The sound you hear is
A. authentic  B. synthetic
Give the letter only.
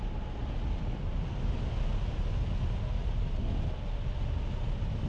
A